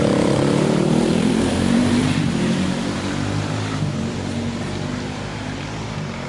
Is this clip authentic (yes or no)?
no